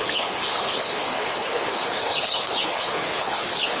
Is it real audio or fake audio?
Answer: fake